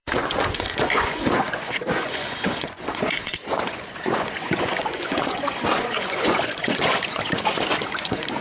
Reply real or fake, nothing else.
fake